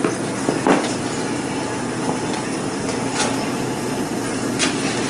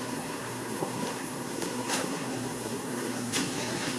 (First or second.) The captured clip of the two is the first